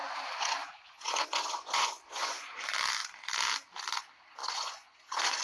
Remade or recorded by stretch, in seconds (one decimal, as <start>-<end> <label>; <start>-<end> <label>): 0.0-2.6 remade; 2.6-4.4 recorded; 4.4-5.4 remade